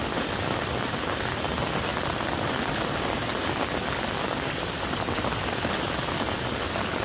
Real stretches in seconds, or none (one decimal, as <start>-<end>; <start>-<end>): 0.0-7.0